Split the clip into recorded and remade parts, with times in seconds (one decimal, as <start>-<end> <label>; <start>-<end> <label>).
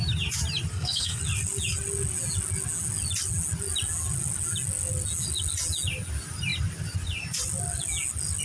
0.0-0.7 recorded; 0.7-1.2 remade; 1.2-8.4 recorded